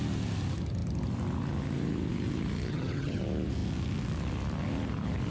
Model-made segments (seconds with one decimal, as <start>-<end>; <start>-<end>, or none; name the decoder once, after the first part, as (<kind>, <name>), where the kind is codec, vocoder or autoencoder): 2.7-3.2 (vocoder, HiFi-GAN)